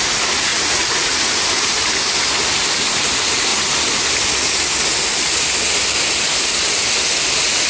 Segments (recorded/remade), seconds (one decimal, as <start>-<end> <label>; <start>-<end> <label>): 0.0-0.5 recorded; 0.5-1.3 remade; 1.3-7.7 recorded